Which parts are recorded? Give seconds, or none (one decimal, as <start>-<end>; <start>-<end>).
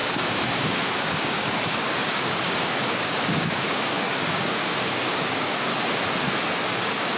5.7-6.8